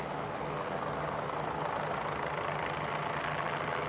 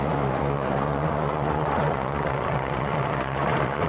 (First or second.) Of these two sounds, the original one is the first